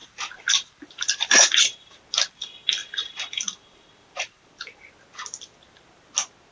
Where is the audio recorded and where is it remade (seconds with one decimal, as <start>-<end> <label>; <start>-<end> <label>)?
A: 0.0-2.0 remade; 2.0-2.8 recorded; 2.8-4.9 remade; 4.9-6.5 recorded